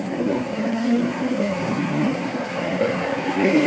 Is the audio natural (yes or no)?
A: no